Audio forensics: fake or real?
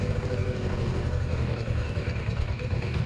fake